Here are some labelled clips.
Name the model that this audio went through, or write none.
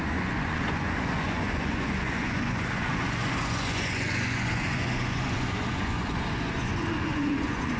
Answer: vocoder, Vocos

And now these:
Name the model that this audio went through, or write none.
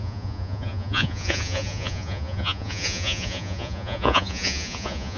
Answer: vocoder, Vocos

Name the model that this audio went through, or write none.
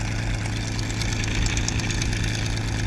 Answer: none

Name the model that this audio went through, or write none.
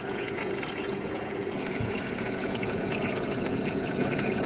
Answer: vocoder, Vocos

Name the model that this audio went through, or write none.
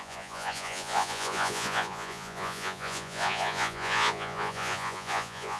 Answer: vocoder, Vocos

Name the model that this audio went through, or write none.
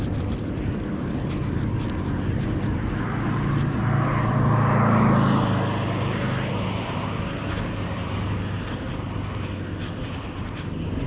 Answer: none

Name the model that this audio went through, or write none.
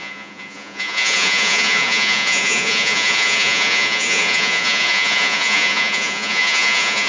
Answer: vocoder, Vocos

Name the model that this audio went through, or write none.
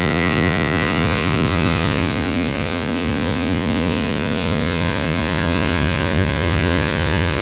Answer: vocoder, Vocos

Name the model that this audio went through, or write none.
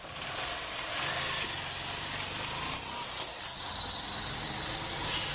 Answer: none